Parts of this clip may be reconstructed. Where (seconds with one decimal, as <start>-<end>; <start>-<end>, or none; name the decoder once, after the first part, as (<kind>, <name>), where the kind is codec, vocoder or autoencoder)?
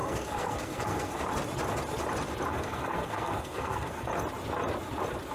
0.0-1.2 (codec, SNAC); 2.5-4.1